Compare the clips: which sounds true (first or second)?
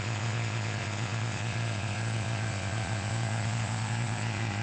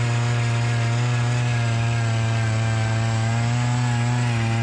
second